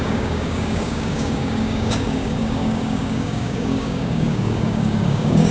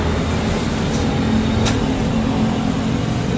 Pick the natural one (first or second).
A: second